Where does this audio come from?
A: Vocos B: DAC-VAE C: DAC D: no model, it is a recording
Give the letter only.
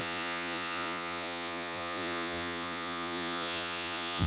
A